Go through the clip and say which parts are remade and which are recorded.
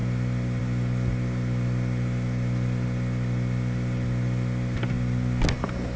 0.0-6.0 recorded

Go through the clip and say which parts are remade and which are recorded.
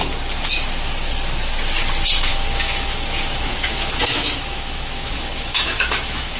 0.0-2.3 recorded; 2.3-6.4 remade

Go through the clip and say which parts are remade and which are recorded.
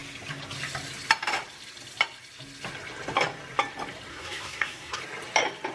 0.0-4.1 recorded; 4.1-5.0 remade; 5.0-5.7 recorded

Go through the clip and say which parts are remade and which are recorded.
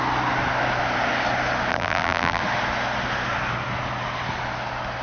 0.0-1.7 recorded; 1.7-2.4 remade; 2.4-5.0 recorded